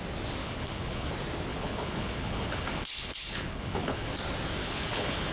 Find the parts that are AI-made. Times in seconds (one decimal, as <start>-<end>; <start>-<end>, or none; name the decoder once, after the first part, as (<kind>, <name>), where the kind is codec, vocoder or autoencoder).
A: 0.4-1.1 (codec, HILCodec); 1.5-4.1; 4.6-5.3